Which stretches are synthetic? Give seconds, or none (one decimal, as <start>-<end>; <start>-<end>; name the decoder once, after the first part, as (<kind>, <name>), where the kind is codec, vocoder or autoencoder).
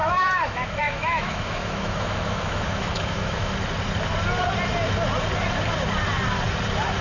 0.0-3.5 (autoencoder, DAC-VAE)